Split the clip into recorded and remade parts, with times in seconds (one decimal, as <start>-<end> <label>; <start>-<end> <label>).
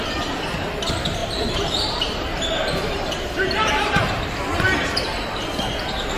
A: 0.0-1.2 recorded; 1.2-4.3 remade; 4.3-6.2 recorded